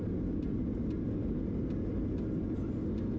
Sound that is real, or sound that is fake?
real